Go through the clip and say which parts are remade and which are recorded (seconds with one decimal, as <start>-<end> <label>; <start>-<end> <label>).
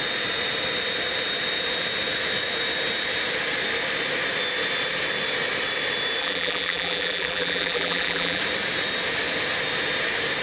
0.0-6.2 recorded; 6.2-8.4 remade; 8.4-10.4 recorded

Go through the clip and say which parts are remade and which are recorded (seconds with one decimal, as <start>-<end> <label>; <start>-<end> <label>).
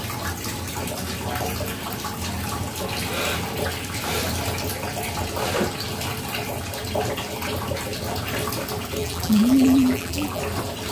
0.0-9.0 recorded; 9.0-10.4 remade; 10.4-10.9 recorded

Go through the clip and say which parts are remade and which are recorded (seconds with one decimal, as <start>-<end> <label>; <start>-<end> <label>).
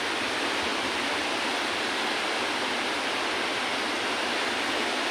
0.0-0.7 recorded; 0.7-3.4 remade; 3.4-5.1 recorded